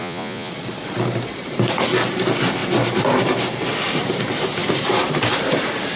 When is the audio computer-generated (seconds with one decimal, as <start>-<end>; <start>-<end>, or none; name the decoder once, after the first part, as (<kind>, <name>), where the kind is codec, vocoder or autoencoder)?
0.0-0.5 (vocoder, Vocos)

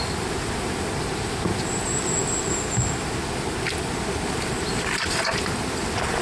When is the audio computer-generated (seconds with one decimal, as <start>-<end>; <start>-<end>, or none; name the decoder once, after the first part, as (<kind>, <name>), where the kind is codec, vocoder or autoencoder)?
none